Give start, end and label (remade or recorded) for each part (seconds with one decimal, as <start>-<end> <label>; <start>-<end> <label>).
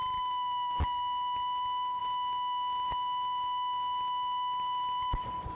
0.0-5.5 recorded